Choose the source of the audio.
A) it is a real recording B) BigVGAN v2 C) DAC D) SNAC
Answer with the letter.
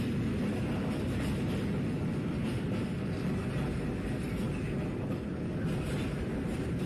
A